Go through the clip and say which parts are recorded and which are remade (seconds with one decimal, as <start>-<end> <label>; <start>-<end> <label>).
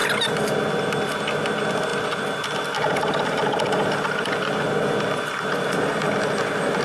0.0-6.8 recorded